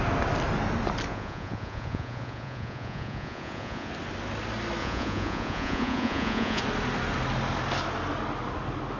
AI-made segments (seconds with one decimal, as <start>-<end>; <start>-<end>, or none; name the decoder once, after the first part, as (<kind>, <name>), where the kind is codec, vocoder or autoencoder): 1.1-3.9 (vocoder, Vocos); 4.8-6.6